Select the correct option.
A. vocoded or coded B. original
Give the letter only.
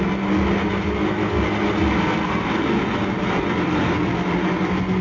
B